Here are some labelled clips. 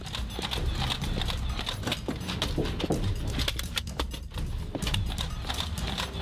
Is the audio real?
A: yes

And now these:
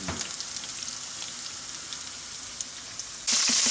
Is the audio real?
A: yes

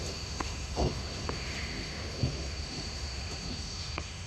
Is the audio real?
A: no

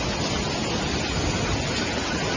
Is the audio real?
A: yes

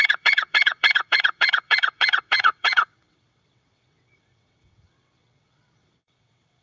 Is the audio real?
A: no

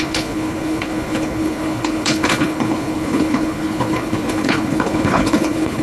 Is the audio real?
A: no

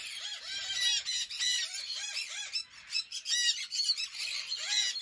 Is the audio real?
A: yes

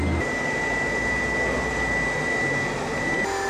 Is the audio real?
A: yes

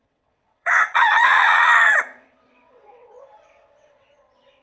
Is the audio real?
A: no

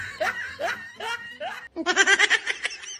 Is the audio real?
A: yes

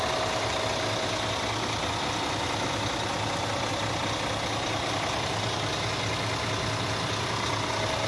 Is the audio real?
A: yes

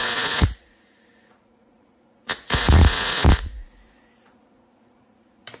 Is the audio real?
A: no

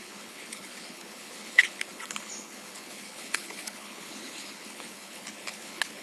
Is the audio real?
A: no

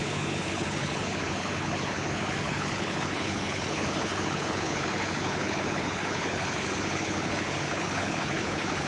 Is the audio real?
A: no